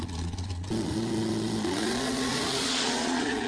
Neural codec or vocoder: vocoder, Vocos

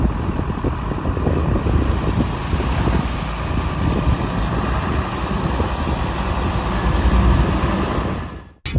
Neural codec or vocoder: none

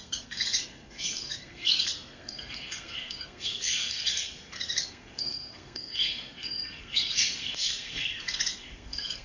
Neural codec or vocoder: codec, SNAC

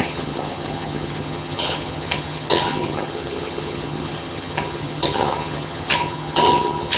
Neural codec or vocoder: vocoder, HiFi-GAN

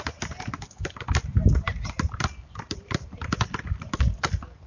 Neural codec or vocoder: none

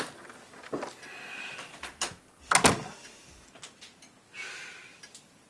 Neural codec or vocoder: none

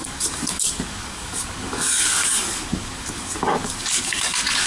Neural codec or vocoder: codec, DAC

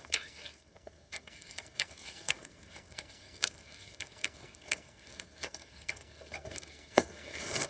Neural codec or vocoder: codec, SNAC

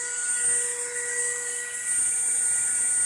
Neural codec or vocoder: none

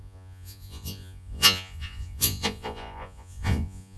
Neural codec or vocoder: vocoder, Vocos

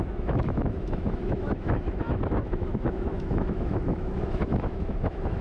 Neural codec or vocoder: autoencoder, DAC-VAE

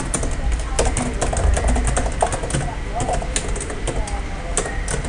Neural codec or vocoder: none